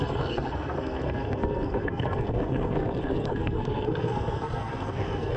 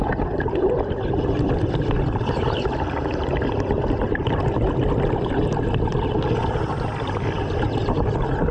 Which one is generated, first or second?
first